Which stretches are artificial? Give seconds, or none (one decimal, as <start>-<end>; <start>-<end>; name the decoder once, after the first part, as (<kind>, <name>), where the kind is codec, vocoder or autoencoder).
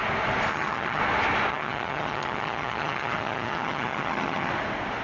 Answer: 0.5-1.0 (vocoder, HiFi-GAN); 1.5-4.5